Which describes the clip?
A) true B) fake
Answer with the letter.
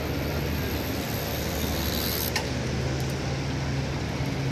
A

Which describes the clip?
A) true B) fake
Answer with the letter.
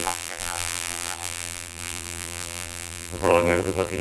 B